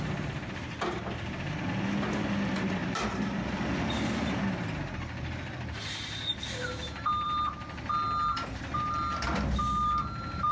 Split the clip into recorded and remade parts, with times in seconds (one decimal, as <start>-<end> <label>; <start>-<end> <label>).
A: 0.0-2.8 recorded; 2.8-3.8 remade; 3.8-6.7 recorded; 6.7-7.4 remade; 7.4-10.5 recorded